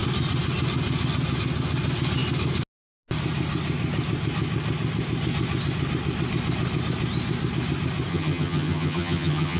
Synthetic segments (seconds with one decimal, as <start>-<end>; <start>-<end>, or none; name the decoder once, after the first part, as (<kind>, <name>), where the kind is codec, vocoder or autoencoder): 8.1-9.6 (vocoder, HiFi-GAN)